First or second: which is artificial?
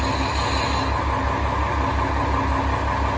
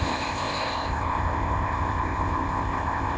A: second